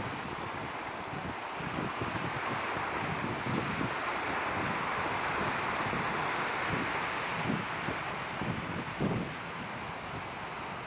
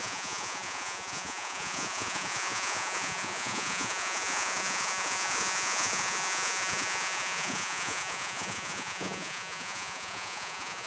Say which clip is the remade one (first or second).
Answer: second